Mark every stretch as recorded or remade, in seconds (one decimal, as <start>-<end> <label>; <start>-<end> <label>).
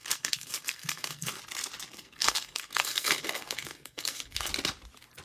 0.0-1.4 remade; 1.4-1.9 recorded; 1.9-4.5 remade; 4.5-5.2 recorded